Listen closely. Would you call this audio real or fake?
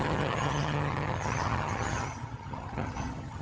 fake